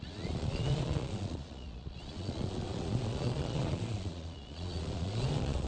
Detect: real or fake fake